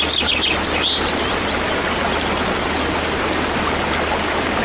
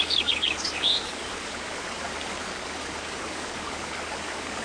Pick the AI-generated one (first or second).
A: second